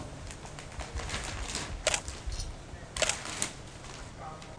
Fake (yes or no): no